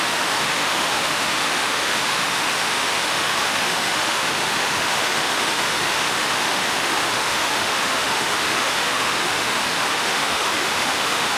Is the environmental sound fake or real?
fake